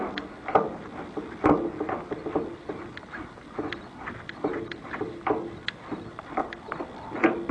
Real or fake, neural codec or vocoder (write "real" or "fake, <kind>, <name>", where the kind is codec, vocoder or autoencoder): real